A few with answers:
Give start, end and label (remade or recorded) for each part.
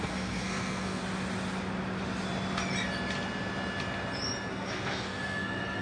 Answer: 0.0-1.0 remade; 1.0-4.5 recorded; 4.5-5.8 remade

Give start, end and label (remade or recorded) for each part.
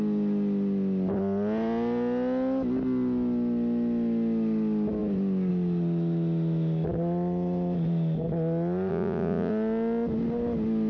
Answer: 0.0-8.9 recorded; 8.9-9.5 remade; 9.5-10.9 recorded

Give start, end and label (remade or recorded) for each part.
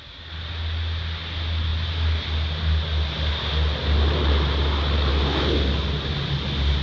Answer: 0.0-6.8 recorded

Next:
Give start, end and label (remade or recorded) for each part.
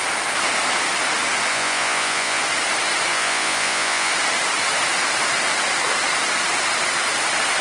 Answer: 0.0-1.5 recorded; 1.5-2.4 remade; 2.4-3.1 recorded; 3.1-4.1 remade; 4.1-7.6 recorded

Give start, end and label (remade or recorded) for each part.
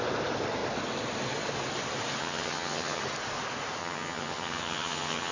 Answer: 0.0-2.2 recorded; 2.2-3.0 remade; 3.0-3.8 recorded; 3.8-5.3 remade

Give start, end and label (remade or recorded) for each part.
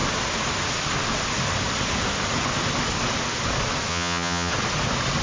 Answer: 0.0-3.9 recorded; 3.9-4.5 remade; 4.5-5.2 recorded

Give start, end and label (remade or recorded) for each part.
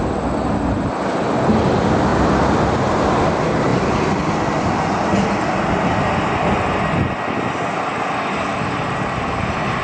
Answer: 0.0-2.1 recorded; 2.1-3.3 remade; 3.3-3.7 recorded; 3.7-6.6 remade; 6.6-9.8 recorded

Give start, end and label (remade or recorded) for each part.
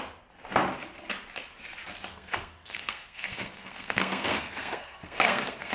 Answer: 0.0-2.1 recorded; 2.1-5.7 remade